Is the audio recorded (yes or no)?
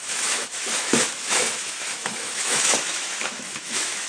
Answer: no